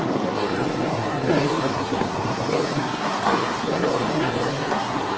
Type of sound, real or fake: fake